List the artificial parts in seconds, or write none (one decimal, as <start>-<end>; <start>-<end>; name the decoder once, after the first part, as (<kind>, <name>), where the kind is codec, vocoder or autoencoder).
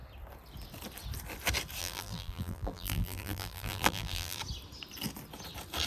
1.8-4.4 (vocoder, BigVGAN v2)